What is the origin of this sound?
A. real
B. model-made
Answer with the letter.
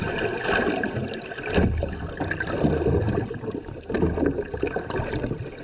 A